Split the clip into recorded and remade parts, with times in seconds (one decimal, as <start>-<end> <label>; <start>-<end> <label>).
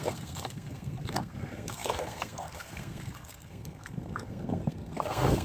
0.0-5.4 remade